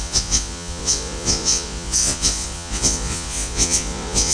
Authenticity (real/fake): fake